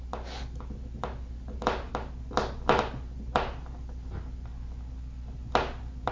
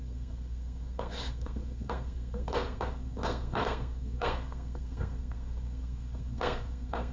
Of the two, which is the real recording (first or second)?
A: first